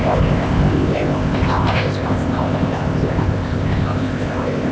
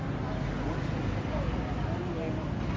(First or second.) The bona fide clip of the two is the second